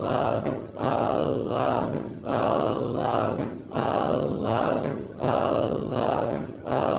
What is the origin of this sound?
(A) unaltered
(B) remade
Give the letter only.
B